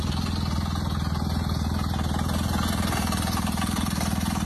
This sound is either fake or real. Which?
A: real